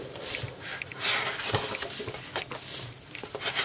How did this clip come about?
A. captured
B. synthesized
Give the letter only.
A